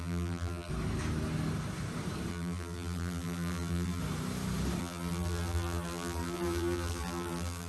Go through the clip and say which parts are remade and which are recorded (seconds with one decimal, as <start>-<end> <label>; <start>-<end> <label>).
0.0-0.7 remade; 0.7-2.3 recorded; 2.3-4.0 remade; 4.0-4.8 recorded; 4.8-7.7 remade